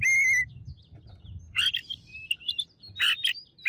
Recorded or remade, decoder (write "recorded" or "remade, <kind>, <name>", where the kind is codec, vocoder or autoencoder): recorded